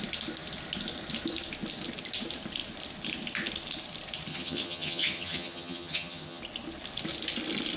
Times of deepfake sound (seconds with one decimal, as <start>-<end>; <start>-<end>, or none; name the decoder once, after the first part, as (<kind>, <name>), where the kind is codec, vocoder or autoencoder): 4.3-6.4 (vocoder, HiFi-GAN)